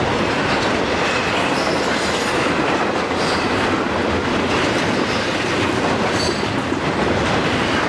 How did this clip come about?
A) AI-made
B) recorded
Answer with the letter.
B